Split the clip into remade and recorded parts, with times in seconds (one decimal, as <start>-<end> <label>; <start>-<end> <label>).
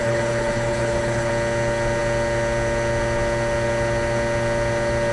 0.0-1.3 remade; 1.3-5.1 recorded